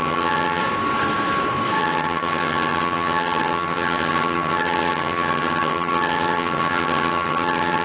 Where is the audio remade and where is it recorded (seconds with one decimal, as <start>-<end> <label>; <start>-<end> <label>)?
0.0-0.6 remade; 0.6-1.8 recorded; 1.8-7.8 remade